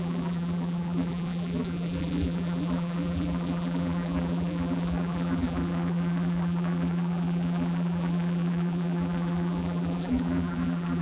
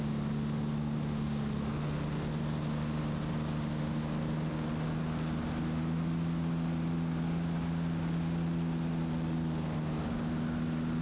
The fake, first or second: first